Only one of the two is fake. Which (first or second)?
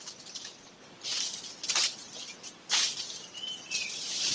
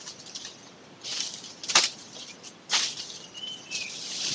second